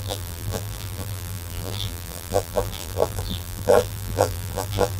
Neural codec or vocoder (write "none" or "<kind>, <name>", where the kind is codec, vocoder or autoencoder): vocoder, BigVGAN v2